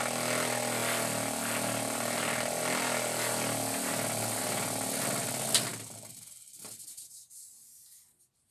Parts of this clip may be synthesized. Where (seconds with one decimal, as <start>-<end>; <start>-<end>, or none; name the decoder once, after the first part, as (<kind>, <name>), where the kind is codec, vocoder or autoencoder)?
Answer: none

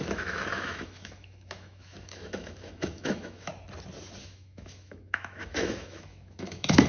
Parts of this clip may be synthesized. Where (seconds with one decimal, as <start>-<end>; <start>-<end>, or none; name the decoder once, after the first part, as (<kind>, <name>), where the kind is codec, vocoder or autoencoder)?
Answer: 0.0-3.5 (autoencoder, DAC-VAE); 4.2-6.9